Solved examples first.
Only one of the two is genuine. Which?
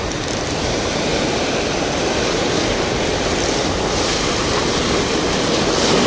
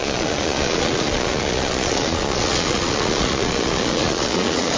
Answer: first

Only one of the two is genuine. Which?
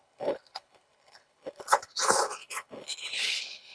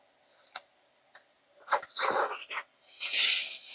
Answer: second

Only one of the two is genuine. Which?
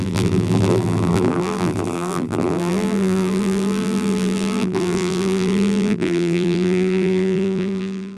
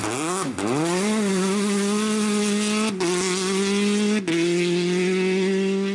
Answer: second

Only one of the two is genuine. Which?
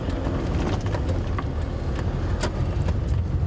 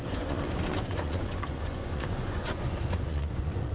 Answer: first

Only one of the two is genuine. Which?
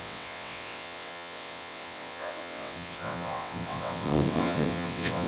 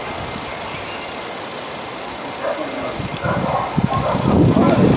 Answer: second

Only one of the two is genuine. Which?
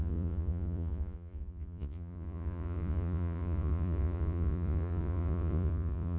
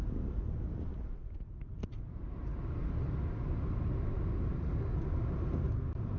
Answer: second